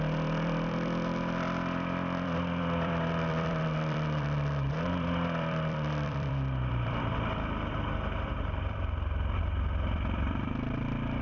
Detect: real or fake fake